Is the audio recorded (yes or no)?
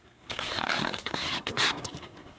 no